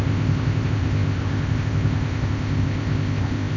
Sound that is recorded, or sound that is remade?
remade